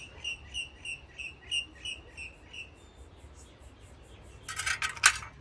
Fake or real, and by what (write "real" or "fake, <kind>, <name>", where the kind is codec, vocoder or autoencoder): real